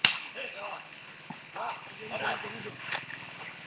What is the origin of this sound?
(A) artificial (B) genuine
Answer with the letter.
A